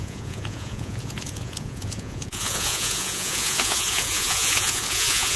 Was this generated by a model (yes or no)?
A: yes